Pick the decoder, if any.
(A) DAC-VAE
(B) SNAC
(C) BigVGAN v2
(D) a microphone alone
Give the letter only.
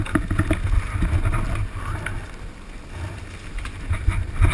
D